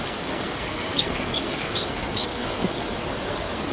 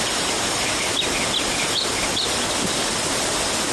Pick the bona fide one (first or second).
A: second